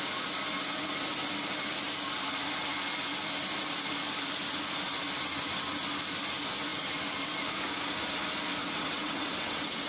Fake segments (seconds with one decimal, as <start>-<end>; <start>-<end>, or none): 8.6-9.9